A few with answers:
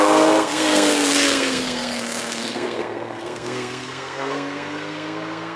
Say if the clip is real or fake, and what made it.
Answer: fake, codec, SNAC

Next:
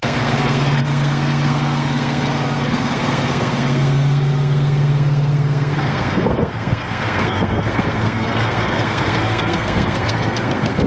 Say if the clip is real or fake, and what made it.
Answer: fake, codec, SNAC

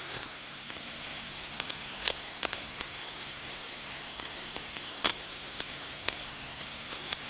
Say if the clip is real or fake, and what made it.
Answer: fake, codec, SNAC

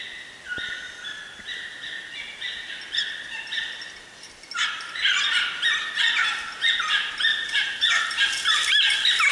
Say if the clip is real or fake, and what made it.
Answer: real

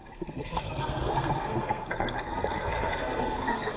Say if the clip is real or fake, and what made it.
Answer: fake, codec, SNAC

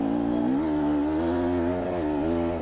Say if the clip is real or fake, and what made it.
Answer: real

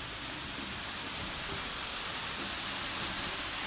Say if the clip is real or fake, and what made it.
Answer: real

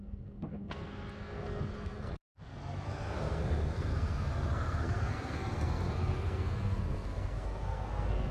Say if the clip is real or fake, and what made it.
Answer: fake, codec, SNAC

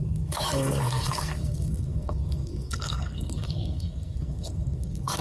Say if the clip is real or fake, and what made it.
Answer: fake, codec, SNAC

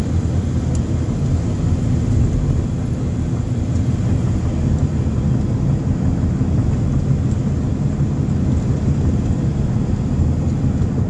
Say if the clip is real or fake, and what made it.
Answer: real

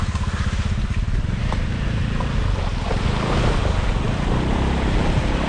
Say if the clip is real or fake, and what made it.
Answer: real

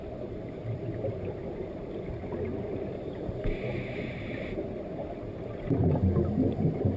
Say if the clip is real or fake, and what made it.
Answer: real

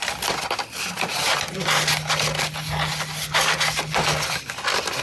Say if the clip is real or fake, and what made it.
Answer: real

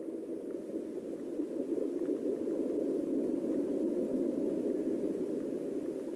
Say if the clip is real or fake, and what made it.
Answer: real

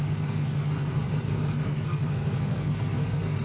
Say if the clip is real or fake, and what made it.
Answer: fake, codec, SNAC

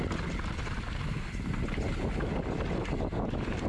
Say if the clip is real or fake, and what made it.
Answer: real